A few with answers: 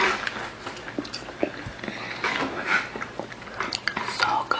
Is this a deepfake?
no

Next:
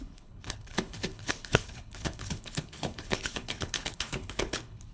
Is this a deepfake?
yes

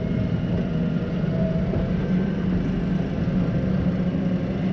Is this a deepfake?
no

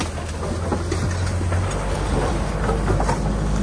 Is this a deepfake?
no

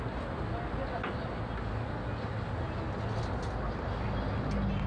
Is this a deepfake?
no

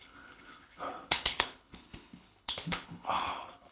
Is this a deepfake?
yes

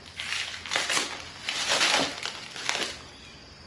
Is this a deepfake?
no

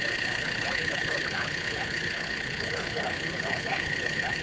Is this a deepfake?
yes